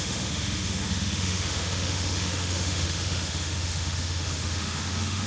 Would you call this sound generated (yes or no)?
yes